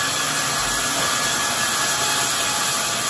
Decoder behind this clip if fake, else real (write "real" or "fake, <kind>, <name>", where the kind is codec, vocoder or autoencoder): real